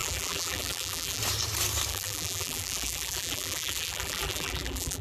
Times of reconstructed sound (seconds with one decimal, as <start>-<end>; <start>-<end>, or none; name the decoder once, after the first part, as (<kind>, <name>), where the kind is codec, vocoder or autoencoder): 0.0-1.2 (vocoder, BigVGAN v2); 1.9-5.0